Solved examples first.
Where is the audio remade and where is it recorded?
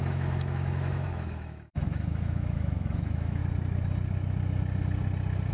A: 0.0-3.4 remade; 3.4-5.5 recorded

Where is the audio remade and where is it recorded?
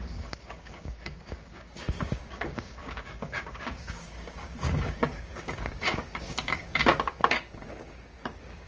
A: 0.0-8.7 remade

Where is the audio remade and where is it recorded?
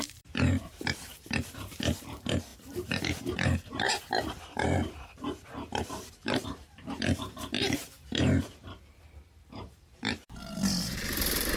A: 0.0-11.6 remade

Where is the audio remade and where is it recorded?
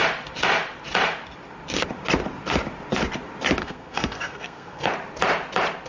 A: 0.0-3.6 recorded; 3.6-4.9 remade; 4.9-5.9 recorded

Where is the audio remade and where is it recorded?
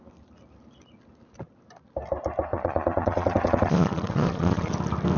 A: 0.0-2.5 recorded; 2.5-4.7 remade; 4.7-5.2 recorded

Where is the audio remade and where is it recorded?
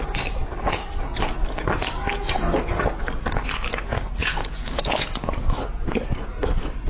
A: 0.0-4.2 recorded; 4.2-5.8 remade; 5.8-6.9 recorded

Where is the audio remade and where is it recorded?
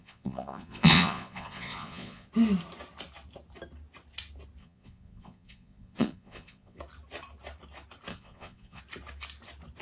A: 0.0-2.3 remade; 2.3-4.6 recorded; 4.6-6.8 remade; 6.8-8.1 recorded; 8.1-8.8 remade; 8.8-9.8 recorded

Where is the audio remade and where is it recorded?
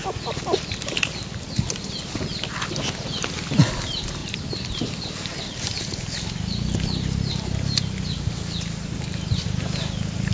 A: 0.0-10.3 recorded